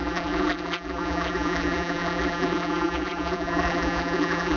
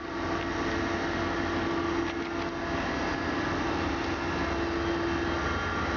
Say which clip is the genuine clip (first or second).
second